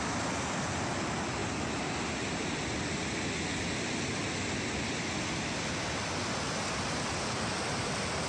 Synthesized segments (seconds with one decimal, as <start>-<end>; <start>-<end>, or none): none